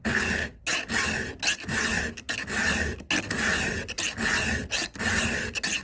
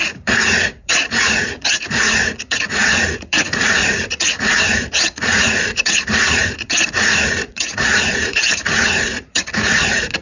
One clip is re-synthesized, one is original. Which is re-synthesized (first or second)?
second